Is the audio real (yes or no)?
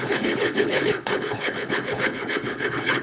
no